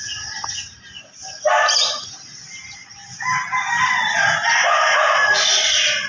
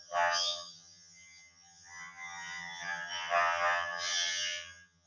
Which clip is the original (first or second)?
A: first